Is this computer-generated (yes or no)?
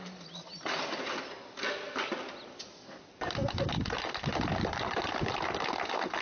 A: no